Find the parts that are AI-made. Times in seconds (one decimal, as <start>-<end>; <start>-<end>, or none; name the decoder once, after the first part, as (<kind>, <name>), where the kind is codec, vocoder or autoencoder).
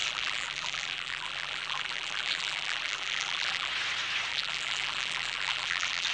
0.0-3.7 (vocoder, BigVGAN v2); 4.3-6.1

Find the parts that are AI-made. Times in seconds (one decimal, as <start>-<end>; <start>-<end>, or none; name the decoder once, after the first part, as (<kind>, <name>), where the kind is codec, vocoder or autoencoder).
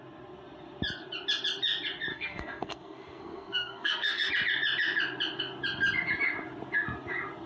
2.1-4.3 (codec, SNAC)